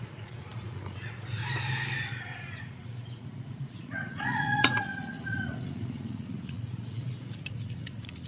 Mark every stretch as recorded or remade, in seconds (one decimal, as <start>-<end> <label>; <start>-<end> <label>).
0.0-1.4 remade; 1.4-2.1 recorded; 2.1-8.3 remade